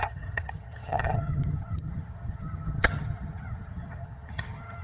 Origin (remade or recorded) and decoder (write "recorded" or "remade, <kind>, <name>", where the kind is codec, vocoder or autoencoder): remade, vocoder, HiFi-GAN